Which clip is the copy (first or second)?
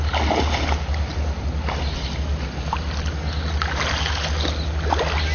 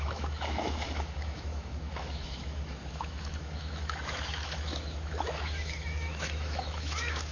second